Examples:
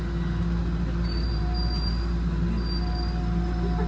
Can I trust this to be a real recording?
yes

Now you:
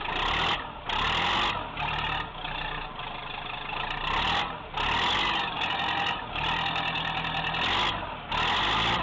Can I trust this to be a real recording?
yes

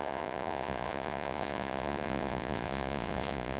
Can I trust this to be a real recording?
no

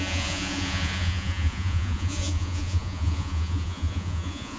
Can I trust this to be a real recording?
no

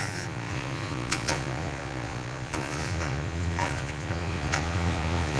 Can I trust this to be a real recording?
no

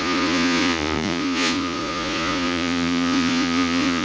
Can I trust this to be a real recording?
no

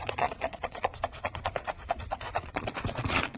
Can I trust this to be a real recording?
no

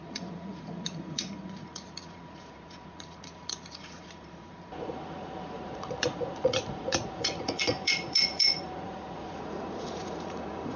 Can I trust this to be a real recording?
no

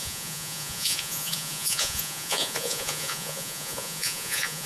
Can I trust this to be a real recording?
no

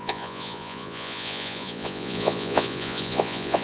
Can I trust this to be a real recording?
no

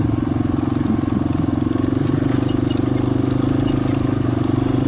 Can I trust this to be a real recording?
yes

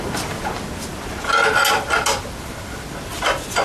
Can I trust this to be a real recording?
yes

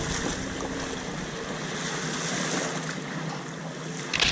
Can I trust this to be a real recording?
yes